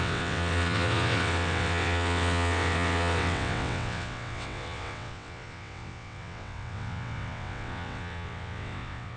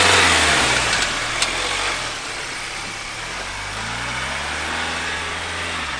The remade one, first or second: first